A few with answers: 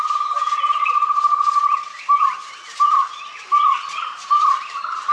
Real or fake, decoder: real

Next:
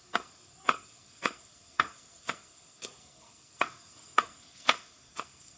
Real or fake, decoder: fake, codec, SNAC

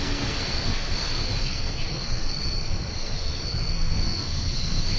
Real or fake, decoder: fake, codec, SNAC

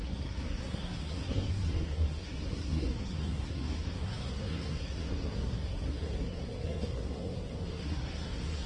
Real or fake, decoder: fake, codec, SNAC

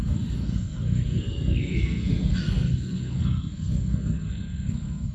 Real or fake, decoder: fake, codec, SNAC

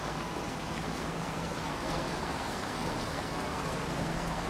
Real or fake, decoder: fake, codec, SNAC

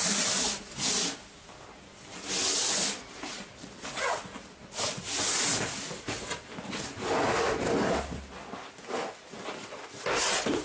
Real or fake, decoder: real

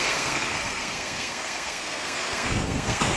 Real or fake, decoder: fake, codec, SNAC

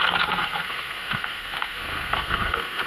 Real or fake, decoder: fake, codec, SNAC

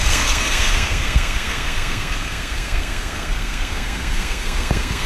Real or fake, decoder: fake, codec, SNAC